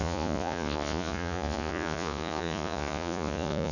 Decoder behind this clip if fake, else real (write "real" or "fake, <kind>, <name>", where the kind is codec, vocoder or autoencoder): fake, vocoder, Vocos